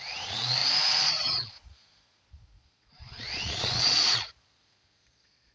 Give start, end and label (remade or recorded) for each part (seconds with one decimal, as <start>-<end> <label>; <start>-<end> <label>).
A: 0.0-5.5 remade